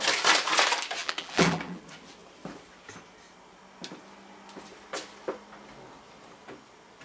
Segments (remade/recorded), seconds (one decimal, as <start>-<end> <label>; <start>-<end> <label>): 0.0-1.0 recorded; 1.0-1.8 remade; 1.8-7.0 recorded